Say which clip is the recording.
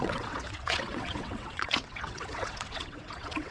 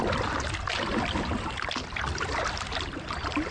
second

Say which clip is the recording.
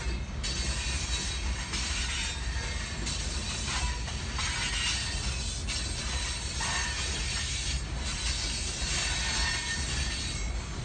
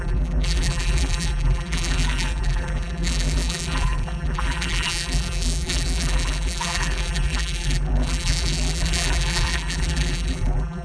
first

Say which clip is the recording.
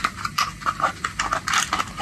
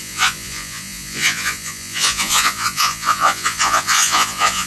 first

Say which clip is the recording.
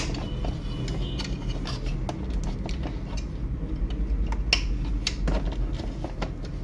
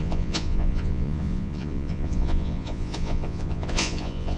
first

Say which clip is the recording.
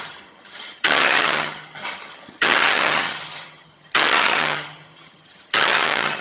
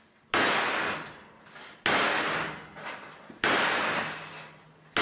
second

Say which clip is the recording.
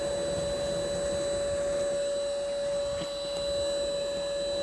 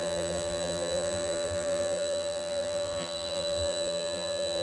first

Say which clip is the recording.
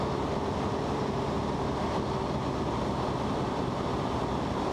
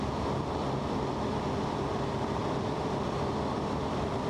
first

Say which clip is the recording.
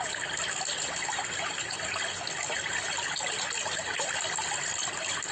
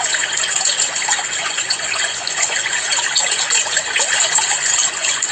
first